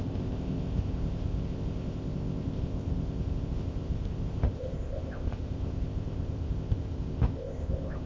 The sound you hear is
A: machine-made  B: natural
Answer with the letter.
A